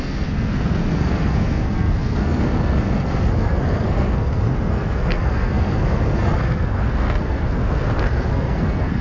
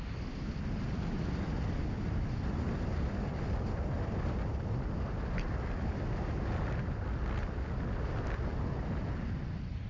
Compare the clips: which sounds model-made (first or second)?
first